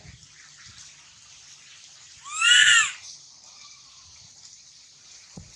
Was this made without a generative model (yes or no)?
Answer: yes